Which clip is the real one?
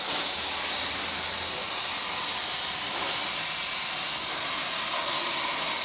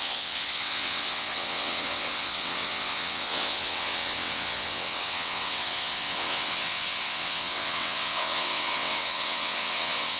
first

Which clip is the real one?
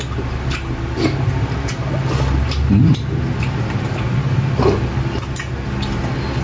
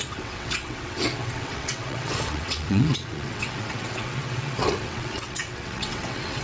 first